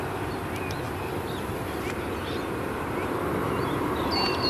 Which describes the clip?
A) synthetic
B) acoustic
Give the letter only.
B